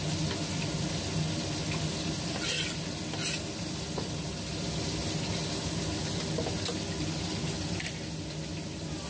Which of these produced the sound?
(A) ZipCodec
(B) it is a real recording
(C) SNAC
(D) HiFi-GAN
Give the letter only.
B